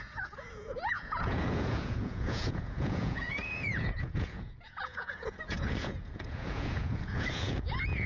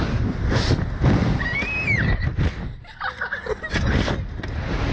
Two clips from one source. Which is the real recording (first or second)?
second